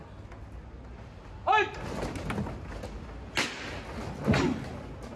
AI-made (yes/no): no